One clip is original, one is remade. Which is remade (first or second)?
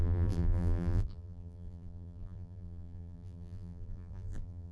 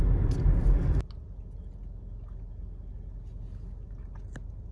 first